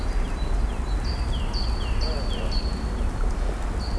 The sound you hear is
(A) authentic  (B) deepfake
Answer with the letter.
A